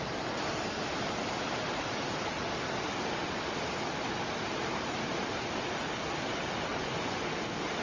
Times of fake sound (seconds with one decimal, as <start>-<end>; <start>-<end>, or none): 6.7-7.3